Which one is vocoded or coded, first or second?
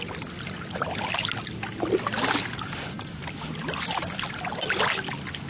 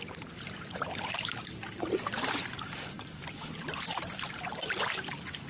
second